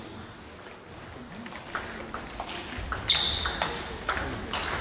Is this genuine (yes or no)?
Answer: yes